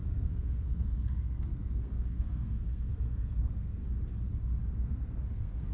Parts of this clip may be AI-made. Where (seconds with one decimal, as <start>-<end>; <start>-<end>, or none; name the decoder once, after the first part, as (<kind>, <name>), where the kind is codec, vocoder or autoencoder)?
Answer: 0.0-3.8 (codec, SNAC); 4.7-5.7